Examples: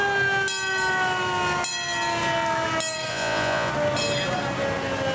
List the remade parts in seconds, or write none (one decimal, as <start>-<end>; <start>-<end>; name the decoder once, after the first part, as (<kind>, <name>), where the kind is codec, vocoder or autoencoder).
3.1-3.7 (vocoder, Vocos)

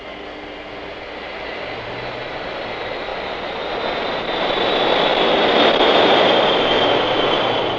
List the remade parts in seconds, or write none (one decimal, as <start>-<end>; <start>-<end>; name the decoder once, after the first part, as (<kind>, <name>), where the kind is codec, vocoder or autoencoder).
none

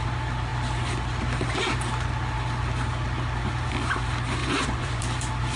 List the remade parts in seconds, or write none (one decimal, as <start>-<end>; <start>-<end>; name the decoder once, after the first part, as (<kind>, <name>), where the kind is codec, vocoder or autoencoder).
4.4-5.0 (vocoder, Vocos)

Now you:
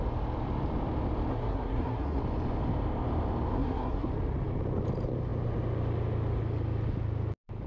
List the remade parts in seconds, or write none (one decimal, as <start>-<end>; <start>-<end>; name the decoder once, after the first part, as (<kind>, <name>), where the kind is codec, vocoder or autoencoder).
1.3-2.2 (codec, SNAC); 3.5-4.1

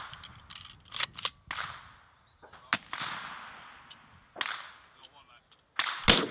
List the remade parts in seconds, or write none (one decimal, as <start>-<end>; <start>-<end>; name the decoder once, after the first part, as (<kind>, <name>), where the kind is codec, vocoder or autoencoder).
none

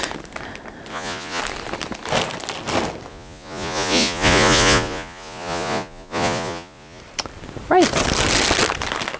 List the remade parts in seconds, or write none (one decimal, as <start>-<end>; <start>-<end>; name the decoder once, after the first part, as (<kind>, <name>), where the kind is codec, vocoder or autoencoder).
0.9-1.4 (vocoder, Vocos); 3.1-7.0